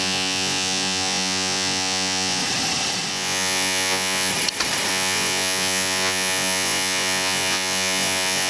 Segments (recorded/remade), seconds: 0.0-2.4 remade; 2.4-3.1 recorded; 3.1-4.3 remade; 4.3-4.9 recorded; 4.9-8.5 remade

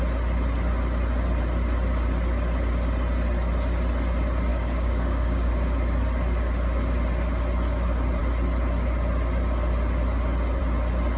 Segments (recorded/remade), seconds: 0.0-4.5 recorded; 4.5-5.5 remade; 5.5-11.2 recorded

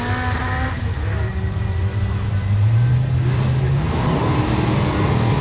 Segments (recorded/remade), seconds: 0.0-5.4 recorded

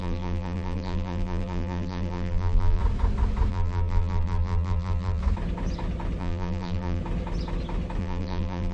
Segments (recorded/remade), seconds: 0.0-2.8 remade; 2.8-3.5 recorded; 3.5-5.2 remade; 5.2-6.2 recorded; 6.2-7.0 remade; 7.0-8.0 recorded; 8.0-8.7 remade